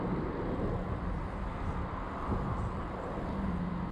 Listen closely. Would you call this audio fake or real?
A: real